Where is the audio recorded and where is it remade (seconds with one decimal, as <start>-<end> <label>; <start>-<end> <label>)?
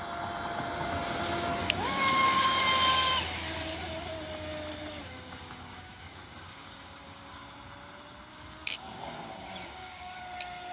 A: 0.0-1.6 recorded; 1.6-3.1 remade; 3.1-5.0 recorded; 5.0-7.5 remade; 7.5-8.3 recorded; 8.3-10.2 remade; 10.2-10.7 recorded